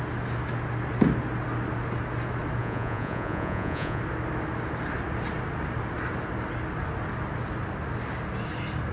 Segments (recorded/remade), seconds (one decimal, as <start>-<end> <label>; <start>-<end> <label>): 0.0-2.6 recorded; 2.6-4.0 remade; 4.0-8.9 recorded